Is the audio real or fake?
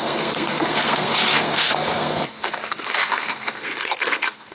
fake